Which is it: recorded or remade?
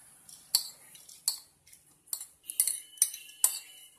recorded